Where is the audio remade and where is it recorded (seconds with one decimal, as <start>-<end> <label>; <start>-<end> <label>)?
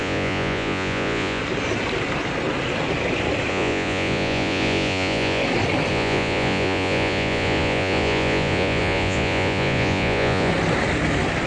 0.0-1.4 remade; 1.4-3.5 recorded; 3.5-5.4 remade; 5.4-5.9 recorded; 5.9-10.5 remade; 10.5-11.5 recorded